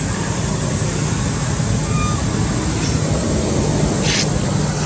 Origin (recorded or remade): recorded